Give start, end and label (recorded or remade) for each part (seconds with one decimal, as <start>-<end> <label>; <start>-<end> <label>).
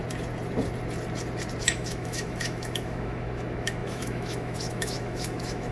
0.0-1.6 recorded; 1.6-5.7 remade